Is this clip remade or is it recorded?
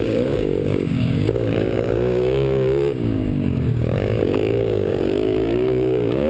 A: remade